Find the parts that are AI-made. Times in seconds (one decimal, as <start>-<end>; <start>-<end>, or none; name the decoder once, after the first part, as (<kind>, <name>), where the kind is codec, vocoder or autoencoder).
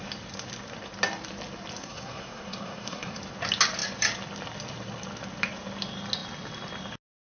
1.8-3.2 (codec, SNAC)